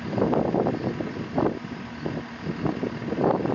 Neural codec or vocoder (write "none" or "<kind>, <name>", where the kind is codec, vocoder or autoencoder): none